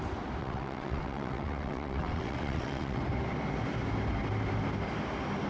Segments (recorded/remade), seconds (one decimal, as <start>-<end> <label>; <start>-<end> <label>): 0.0-0.4 recorded; 0.4-3.0 remade; 3.0-5.5 recorded